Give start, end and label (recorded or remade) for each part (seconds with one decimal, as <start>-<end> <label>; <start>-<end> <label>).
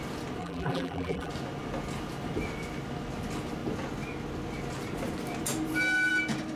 0.0-0.4 recorded; 0.4-1.3 remade; 1.3-6.6 recorded